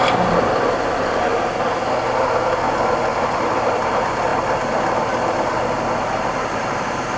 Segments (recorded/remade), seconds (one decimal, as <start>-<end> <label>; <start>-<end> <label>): 0.0-3.1 recorded; 3.1-3.9 remade; 3.9-4.3 recorded; 4.3-5.4 remade; 5.4-7.2 recorded